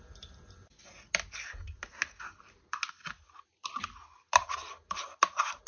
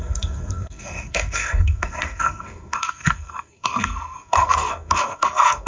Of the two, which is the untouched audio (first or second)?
first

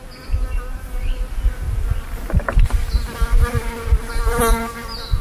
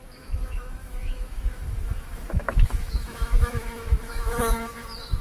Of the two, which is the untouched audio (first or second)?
first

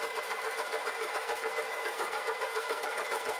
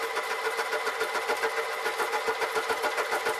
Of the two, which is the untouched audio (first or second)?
second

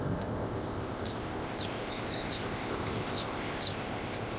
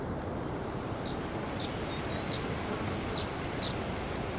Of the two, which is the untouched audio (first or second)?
second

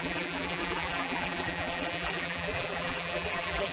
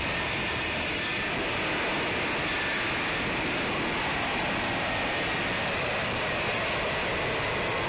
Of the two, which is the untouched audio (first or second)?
second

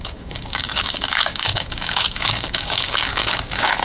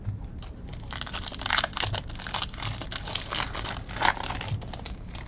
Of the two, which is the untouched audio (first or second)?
second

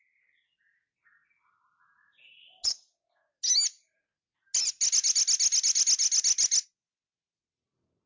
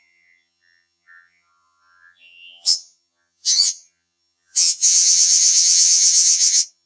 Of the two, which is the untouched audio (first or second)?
first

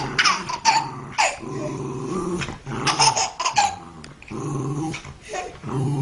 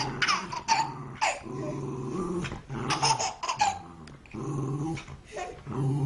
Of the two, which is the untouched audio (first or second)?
second